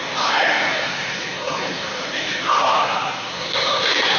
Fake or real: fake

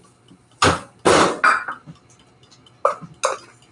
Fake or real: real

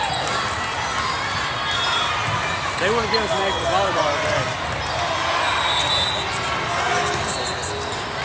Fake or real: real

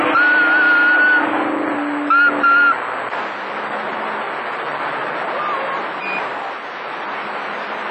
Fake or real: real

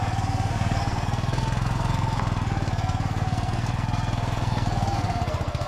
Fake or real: fake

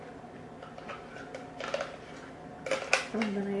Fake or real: real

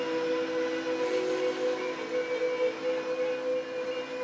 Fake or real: real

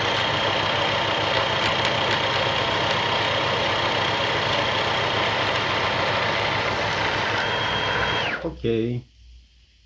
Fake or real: real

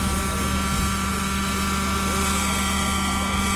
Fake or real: real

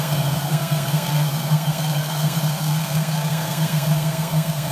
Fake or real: fake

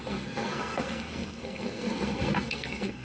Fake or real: fake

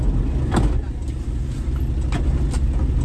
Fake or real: real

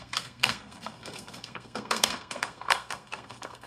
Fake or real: fake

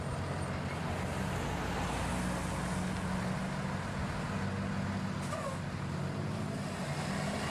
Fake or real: real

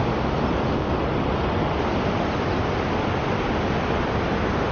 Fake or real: real